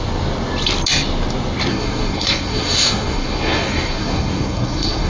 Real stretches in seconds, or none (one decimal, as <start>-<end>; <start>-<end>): 0.0-1.7